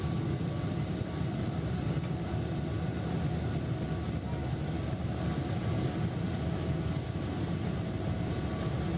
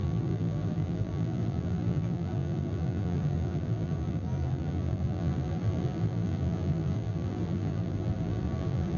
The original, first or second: first